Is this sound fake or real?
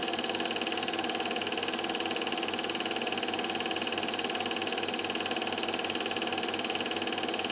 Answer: real